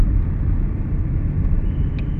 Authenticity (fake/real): real